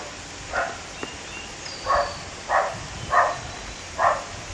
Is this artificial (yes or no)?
no